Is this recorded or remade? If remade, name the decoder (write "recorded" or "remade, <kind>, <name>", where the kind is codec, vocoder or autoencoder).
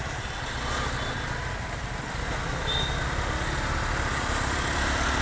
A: recorded